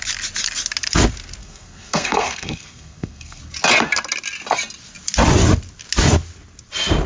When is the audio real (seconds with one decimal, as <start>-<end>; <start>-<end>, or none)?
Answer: 0.0-1.4; 3.4-7.1